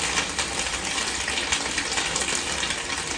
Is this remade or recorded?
recorded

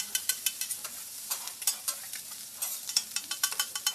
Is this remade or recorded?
remade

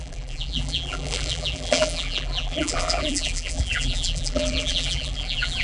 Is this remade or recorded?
remade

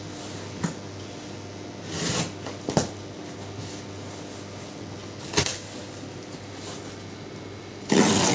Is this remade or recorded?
recorded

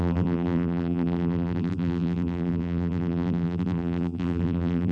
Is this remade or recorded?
remade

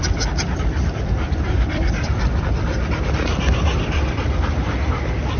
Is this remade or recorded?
remade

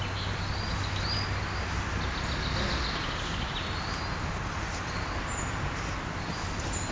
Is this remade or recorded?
recorded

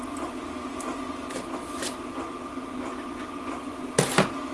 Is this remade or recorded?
recorded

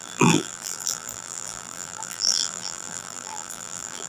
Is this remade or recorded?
remade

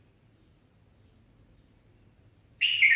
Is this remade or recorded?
recorded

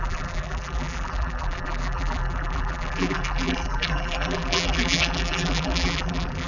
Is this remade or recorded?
remade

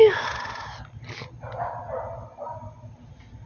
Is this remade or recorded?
recorded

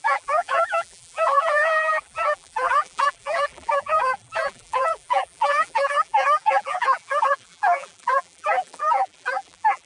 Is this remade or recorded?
remade